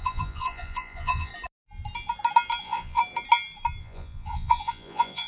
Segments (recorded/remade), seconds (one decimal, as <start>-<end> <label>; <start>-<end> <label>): 0.0-1.3 remade; 1.3-2.6 recorded; 2.6-3.0 remade; 3.0-3.8 recorded; 3.8-5.3 remade